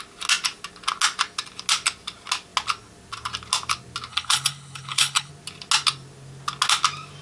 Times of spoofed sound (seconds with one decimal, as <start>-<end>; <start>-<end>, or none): 4.1-5.3